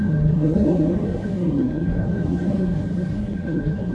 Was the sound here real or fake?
fake